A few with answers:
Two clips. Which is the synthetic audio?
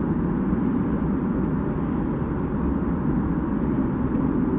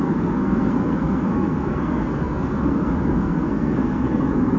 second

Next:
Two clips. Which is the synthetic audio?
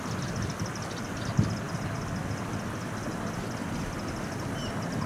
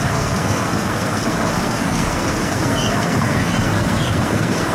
second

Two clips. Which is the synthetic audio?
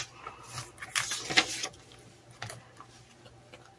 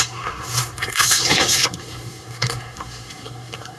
second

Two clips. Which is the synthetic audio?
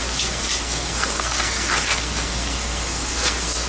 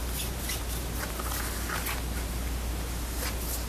first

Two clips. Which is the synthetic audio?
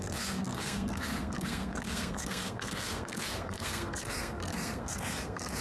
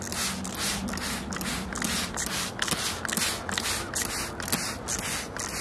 first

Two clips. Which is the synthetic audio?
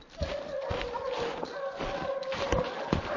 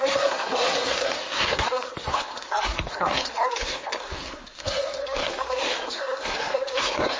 second